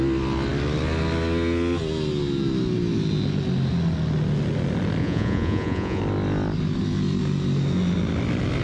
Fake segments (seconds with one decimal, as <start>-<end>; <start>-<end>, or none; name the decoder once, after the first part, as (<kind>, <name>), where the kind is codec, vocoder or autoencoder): 5.0-6.0 (vocoder, Vocos)